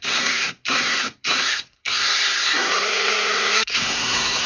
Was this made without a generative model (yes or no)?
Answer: no